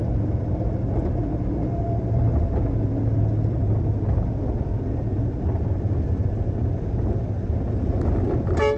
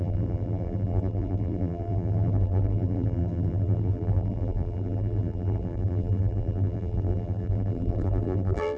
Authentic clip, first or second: first